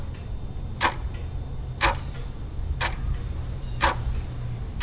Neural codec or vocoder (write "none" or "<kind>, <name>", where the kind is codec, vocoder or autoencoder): none